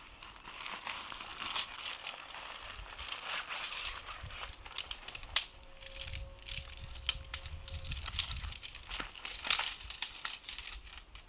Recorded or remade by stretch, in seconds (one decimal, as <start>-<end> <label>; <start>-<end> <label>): 0.0-11.3 recorded